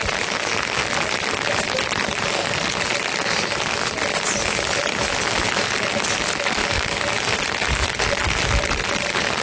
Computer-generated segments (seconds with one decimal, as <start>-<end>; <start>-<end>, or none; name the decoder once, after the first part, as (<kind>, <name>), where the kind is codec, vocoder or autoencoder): none